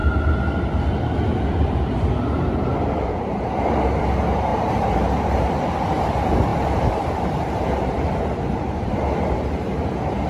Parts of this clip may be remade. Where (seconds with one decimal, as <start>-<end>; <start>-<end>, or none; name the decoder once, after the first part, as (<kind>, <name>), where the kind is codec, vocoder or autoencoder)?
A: 3.0-10.3 (vocoder, BigVGAN v2)